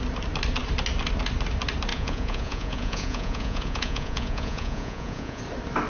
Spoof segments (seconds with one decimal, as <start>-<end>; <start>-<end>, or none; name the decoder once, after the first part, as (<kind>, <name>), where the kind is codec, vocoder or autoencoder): 1.9-5.4 (vocoder, Vocos)